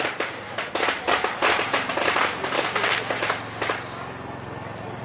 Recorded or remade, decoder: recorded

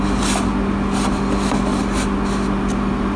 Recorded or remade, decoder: recorded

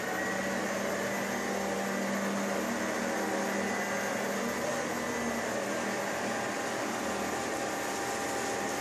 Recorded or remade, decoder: recorded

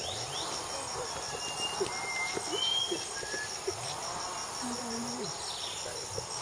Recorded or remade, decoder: recorded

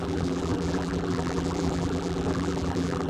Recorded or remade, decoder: remade, vocoder, BigVGAN v2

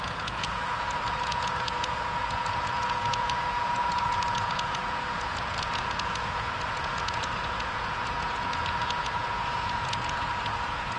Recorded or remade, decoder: remade, vocoder, Vocos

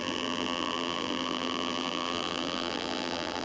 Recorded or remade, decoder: remade, vocoder, BigVGAN v2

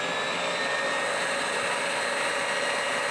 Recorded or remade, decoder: recorded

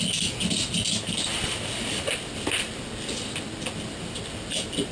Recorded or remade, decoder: recorded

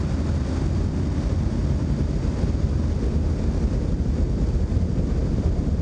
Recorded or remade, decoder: recorded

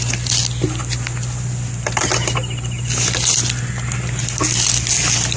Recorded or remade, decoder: recorded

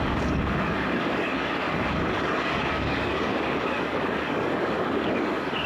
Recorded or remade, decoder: remade, codec, DAC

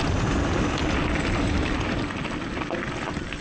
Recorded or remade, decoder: recorded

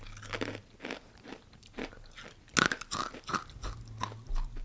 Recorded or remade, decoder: recorded